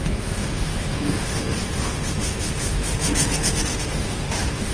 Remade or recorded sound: remade